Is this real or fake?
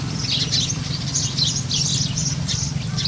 real